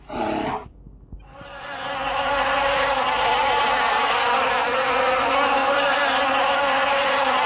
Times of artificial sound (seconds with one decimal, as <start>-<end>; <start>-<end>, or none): none